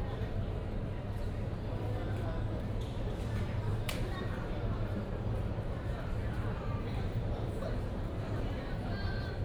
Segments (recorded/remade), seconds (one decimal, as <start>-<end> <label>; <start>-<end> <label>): 0.0-0.6 remade; 0.6-3.2 recorded; 3.2-9.4 remade